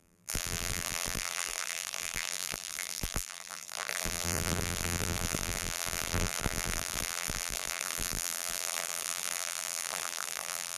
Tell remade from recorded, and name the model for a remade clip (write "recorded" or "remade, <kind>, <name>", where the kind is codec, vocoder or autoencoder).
remade, vocoder, BigVGAN v2